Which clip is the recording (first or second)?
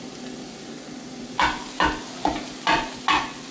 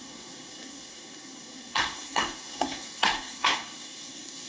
first